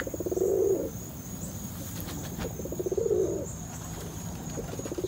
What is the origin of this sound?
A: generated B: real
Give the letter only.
B